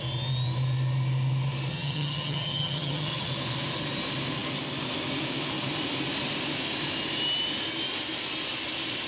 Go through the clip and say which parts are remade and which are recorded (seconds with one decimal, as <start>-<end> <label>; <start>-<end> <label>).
0.0-1.7 recorded; 1.7-3.3 remade; 3.3-9.1 recorded